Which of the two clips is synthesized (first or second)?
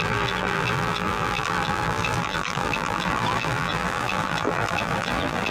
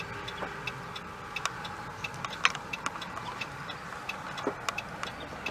first